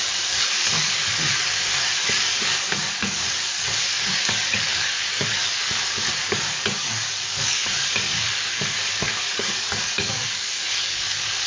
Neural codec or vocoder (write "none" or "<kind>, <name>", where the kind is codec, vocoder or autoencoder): codec, DAC